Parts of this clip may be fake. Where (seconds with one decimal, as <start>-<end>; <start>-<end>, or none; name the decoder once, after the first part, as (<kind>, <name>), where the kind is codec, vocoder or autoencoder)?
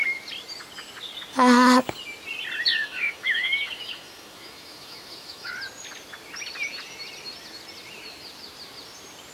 2.7-5.5 (autoencoder, DAC-VAE)